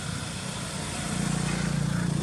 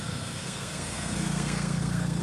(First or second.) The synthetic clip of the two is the second